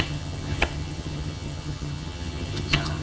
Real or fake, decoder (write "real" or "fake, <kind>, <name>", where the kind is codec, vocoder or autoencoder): fake, vocoder, HiFi-GAN